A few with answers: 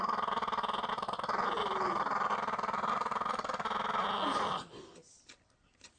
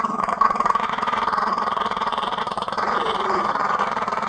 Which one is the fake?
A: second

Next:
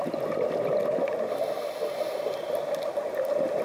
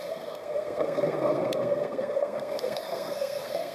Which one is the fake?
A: second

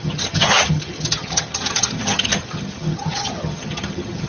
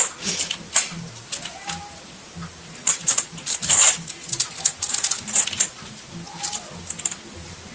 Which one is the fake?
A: first